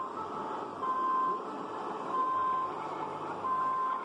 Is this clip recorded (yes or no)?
yes